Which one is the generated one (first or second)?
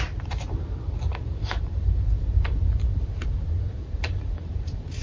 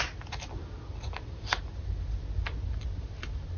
first